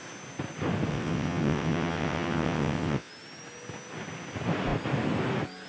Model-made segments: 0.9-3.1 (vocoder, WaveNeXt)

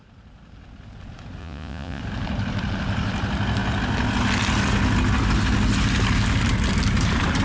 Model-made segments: 1.4-2.0 (vocoder, Vocos)

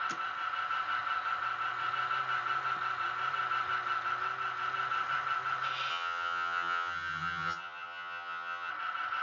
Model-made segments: 5.9-8.7 (vocoder, HiFi-GAN)

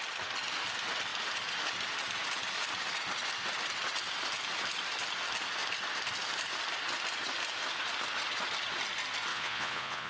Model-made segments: 9.3-10.1 (vocoder, Vocos)

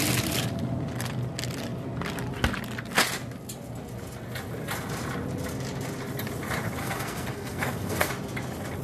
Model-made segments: 6.8-8.1 (codec, SNAC)

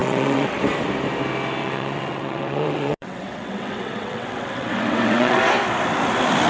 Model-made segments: 0.0-0.6 (vocoder, WaveNeXt); 1.6-5.5

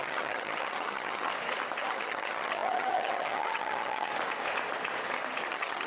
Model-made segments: 0.0-1.3 (vocoder, HiFi-GAN); 1.8-4.1; 5.5-5.9